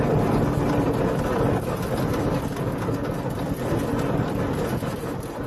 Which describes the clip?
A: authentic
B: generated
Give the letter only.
A